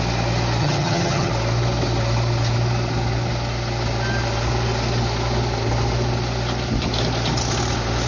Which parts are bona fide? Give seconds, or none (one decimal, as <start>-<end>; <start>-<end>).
0.0-0.6; 1.3-8.1